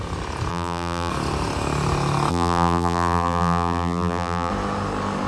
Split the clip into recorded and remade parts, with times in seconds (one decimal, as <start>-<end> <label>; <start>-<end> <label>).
0.0-0.5 recorded; 0.5-1.1 remade; 1.1-2.3 recorded; 2.3-4.5 remade; 4.5-5.3 recorded